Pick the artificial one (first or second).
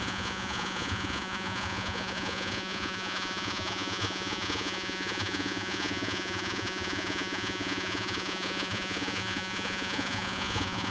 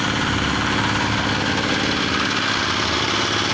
first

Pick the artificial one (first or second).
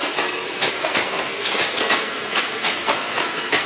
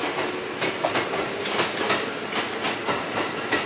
first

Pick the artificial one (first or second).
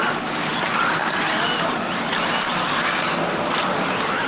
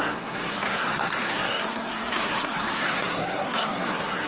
second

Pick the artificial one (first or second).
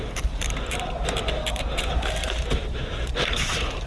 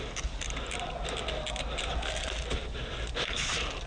first